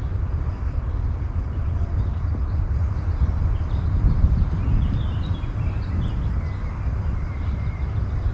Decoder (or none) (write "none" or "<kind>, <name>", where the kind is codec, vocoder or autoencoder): none